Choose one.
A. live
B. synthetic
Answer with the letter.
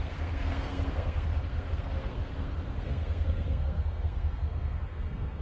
B